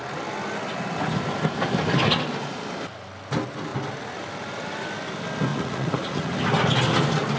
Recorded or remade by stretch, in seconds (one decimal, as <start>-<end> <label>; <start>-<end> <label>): 0.0-5.5 recorded; 5.5-6.3 remade; 6.3-7.4 recorded